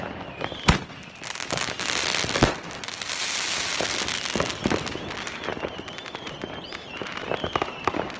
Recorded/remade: recorded